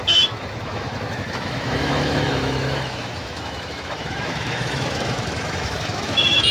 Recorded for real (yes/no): no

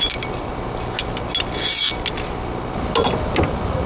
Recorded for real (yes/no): yes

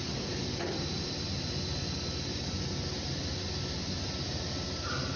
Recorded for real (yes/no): yes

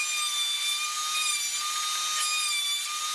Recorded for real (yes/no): yes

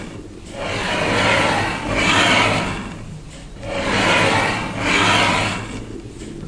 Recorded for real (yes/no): yes